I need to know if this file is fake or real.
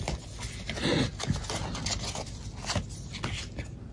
real